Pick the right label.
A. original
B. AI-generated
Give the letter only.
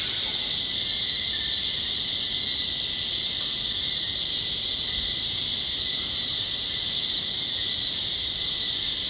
A